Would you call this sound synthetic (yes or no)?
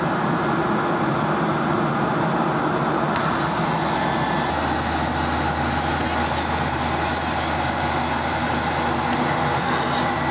no